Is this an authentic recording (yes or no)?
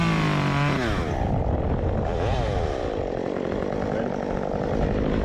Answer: yes